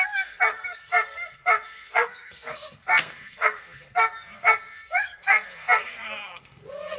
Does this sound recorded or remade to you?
remade